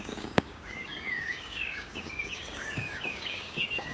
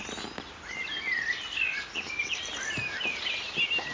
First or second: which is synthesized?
first